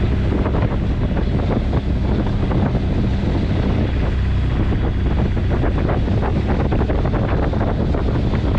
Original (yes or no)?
yes